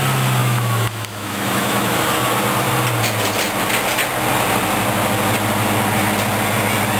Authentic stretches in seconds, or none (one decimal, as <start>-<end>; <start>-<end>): 0.0-0.4; 2.0-7.0